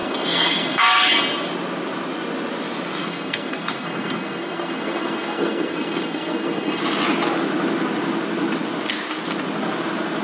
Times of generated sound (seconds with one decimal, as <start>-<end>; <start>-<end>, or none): 0.0-1.2; 3.0-6.8